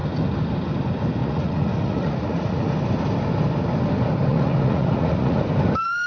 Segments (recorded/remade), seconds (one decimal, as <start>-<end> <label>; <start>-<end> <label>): 0.0-1.2 recorded; 1.2-2.7 remade; 2.7-4.3 recorded; 4.3-5.4 remade; 5.4-6.1 recorded